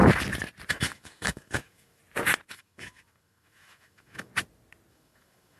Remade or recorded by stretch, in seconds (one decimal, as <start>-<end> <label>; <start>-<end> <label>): 0.0-0.7 recorded; 0.7-2.0 remade; 2.0-2.5 recorded; 2.5-4.3 remade; 4.3-4.9 recorded; 4.9-5.6 remade